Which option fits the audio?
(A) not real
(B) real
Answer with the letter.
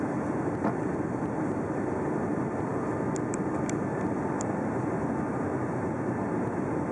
B